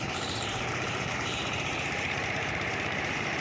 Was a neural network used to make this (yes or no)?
yes